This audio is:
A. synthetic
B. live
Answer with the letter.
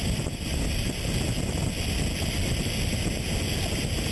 B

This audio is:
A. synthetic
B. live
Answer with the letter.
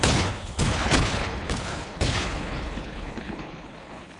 A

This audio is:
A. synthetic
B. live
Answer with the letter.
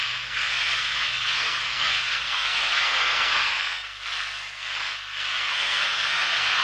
A